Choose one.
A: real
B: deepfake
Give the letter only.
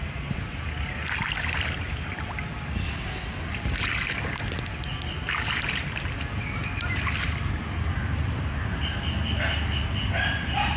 A